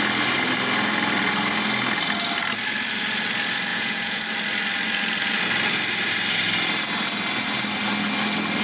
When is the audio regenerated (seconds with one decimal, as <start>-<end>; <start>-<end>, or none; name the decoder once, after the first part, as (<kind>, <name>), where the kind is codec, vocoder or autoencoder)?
3.7-4.2 (vocoder, Vocos)